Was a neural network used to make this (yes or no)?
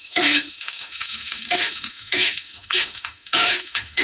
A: yes